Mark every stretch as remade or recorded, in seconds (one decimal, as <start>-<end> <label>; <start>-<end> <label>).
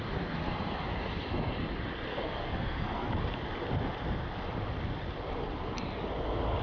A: 0.0-2.1 recorded; 2.1-3.1 remade; 3.1-6.6 recorded